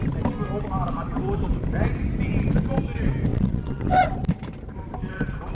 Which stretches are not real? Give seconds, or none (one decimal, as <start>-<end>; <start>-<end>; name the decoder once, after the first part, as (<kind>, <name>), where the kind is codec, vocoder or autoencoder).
3.3-3.9 (vocoder, WaveNeXt)